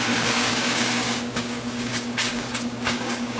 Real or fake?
fake